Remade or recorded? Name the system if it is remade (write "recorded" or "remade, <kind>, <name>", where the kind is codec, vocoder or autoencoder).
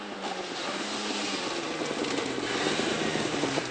recorded